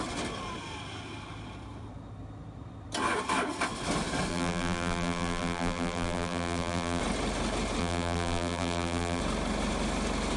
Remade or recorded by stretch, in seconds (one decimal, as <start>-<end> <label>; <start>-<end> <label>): 0.0-4.3 recorded; 4.3-7.0 remade; 7.0-7.8 recorded; 7.8-9.2 remade; 9.2-10.4 recorded